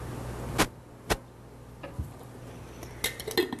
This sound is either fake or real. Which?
real